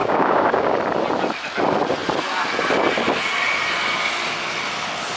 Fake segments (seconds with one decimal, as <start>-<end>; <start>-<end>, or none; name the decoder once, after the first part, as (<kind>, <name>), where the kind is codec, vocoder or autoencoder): 0.0-0.8 (codec, DAC)